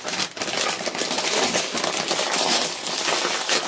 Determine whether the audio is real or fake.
real